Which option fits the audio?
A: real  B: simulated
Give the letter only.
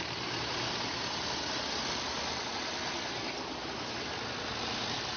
A